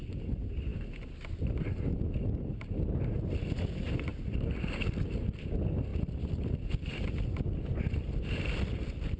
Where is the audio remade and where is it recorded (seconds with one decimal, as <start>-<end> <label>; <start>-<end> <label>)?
0.0-9.2 recorded